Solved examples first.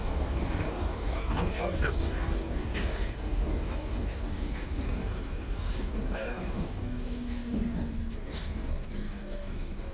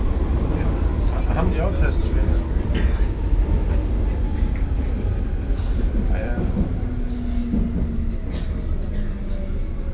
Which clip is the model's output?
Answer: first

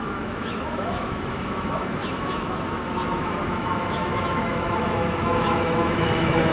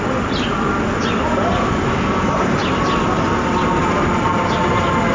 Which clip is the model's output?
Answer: first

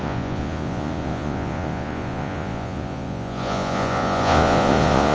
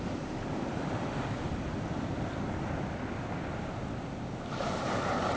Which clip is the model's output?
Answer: first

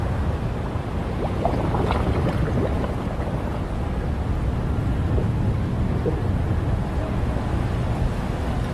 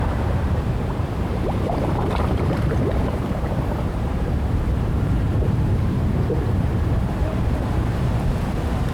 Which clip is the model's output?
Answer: second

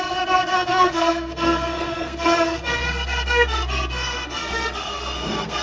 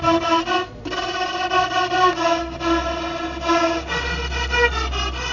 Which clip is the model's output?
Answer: first